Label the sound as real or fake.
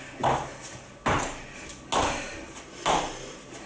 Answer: real